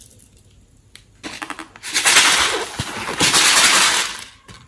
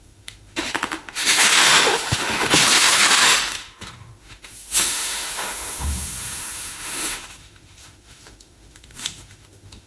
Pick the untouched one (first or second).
first